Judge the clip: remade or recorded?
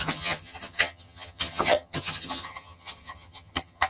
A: remade